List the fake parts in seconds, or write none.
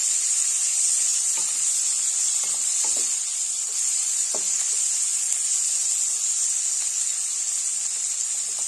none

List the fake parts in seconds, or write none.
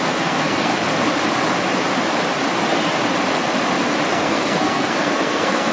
0.0-0.7 (codec, SNAC); 4.1-5.7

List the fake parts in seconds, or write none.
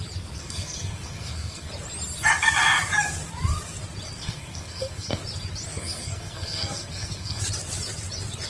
0.4-1.7 (codec, SNAC); 4.2-5.2; 5.7-7.4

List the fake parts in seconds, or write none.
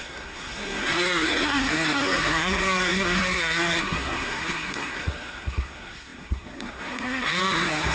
0.0-7.9 (codec, SNAC)